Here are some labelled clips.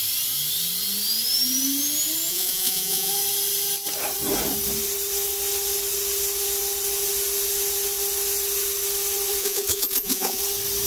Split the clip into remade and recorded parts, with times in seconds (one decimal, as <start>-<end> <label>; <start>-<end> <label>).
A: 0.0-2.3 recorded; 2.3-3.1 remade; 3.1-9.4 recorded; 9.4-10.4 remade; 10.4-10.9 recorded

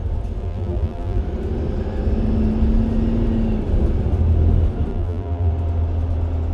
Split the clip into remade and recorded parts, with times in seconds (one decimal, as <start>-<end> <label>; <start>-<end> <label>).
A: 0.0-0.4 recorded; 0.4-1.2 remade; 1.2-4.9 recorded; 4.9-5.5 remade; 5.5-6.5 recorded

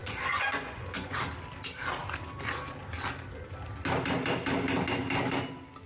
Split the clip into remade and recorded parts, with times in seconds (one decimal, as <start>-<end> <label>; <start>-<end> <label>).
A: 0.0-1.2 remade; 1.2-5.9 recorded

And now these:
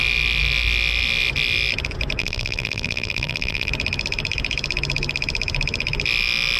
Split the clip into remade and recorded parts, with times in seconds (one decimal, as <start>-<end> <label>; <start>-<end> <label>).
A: 0.0-2.2 recorded; 2.2-3.7 remade; 3.7-6.6 recorded